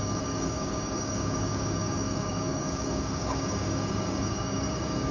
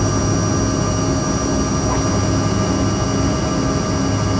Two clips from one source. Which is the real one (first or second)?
second